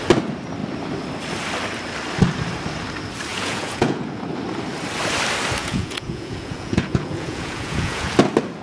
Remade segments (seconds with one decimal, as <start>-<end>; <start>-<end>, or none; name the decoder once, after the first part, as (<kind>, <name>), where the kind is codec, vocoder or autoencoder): 3.3-4.2 (vocoder, Vocos); 5.6-8.1